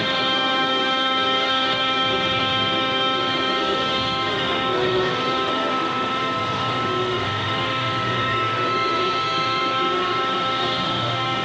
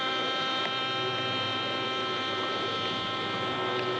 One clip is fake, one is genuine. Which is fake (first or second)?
first